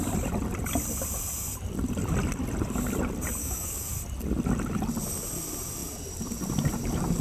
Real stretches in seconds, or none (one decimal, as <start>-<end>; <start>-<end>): 0.0-3.4; 3.9-7.2

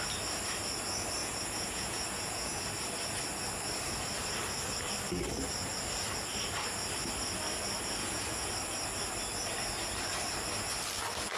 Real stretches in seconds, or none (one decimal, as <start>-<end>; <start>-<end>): 0.0-1.2; 2.6-8.0; 8.5-11.4

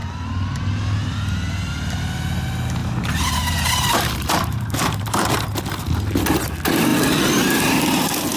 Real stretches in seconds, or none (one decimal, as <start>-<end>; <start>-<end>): 0.0-2.8; 5.6-8.4

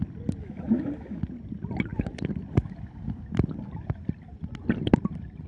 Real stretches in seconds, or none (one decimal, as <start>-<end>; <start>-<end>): 0.0-0.4; 1.2-5.5